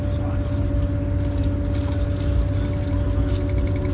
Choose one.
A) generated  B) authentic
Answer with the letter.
B